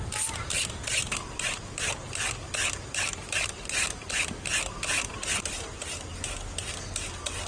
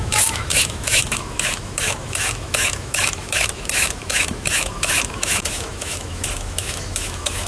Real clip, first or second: first